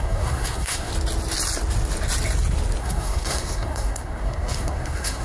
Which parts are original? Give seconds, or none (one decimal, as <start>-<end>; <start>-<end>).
0.9-2.8